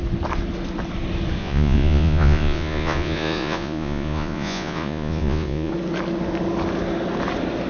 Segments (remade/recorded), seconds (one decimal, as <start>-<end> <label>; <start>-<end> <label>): 0.0-1.4 recorded; 1.4-5.7 remade; 5.7-7.7 recorded